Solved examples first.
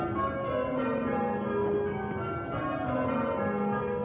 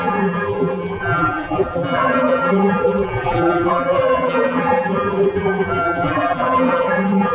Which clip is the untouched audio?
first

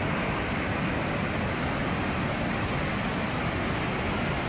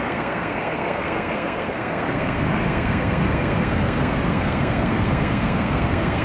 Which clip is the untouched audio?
first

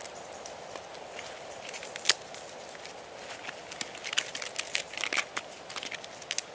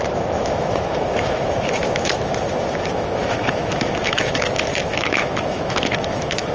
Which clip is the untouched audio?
first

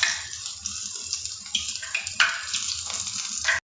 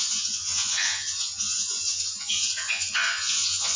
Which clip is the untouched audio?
first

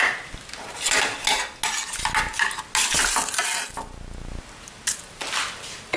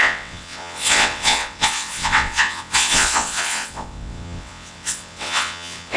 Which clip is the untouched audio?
first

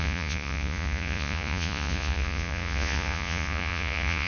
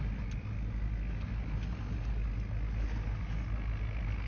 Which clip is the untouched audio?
second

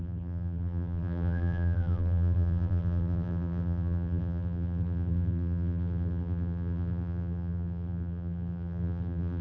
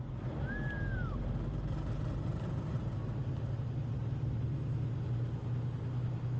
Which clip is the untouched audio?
second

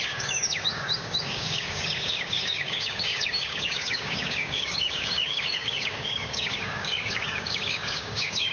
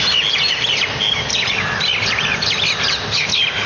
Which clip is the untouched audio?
second